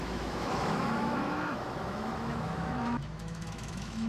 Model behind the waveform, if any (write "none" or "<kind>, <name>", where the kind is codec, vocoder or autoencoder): autoencoder, DAC-VAE